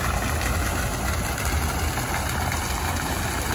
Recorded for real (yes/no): yes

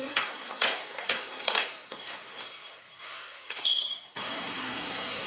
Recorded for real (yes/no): no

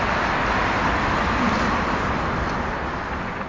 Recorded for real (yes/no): yes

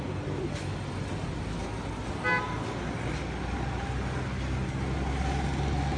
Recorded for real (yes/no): yes